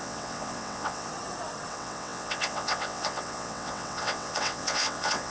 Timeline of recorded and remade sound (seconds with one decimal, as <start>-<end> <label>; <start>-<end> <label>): 0.0-1.1 remade; 1.1-1.7 recorded; 1.7-5.3 remade